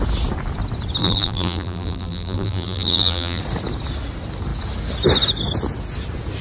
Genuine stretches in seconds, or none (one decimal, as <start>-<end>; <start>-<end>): 0.0-1.0; 3.4-6.4